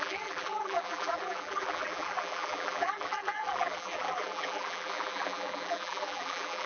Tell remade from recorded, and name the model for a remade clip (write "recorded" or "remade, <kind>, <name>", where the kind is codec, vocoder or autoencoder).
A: remade, vocoder, BigVGAN v2